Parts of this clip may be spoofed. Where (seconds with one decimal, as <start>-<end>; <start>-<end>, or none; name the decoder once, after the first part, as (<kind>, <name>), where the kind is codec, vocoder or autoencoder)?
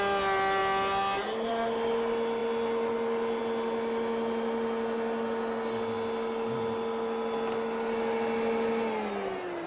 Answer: none